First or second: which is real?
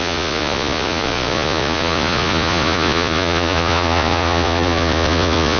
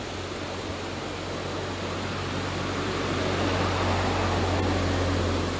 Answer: second